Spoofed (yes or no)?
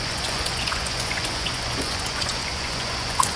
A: yes